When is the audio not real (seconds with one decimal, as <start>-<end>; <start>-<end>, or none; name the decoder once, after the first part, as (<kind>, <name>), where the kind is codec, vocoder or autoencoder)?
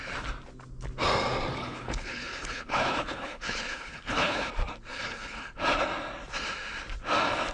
1.6-4.5 (codec, HILCodec); 4.9-5.6